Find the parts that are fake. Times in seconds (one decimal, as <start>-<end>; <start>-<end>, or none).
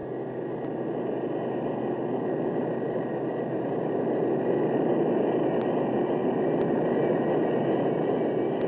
none